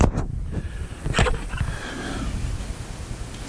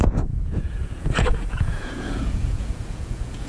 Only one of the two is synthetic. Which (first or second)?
second